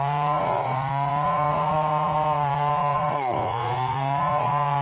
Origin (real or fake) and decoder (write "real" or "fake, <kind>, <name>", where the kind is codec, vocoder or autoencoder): fake, vocoder, Vocos